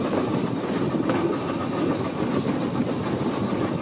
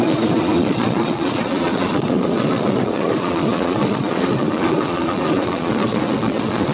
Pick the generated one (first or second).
second